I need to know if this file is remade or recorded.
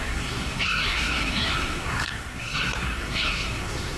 remade